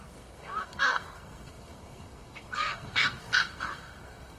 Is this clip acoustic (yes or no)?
no